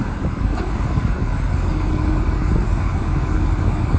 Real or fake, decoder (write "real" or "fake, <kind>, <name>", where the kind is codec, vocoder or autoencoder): fake, codec, DAC